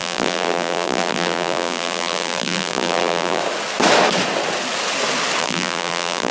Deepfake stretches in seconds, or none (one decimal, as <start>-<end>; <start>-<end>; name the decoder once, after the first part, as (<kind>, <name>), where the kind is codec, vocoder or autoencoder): 0.0-3.4 (vocoder, BigVGAN v2); 5.4-6.3